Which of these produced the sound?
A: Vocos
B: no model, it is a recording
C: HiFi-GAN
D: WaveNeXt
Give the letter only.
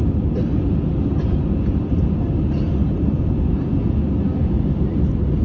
B